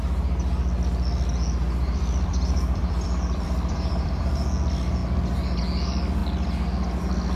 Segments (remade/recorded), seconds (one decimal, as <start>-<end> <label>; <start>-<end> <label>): 0.0-1.8 recorded; 1.8-4.3 remade; 4.3-7.4 recorded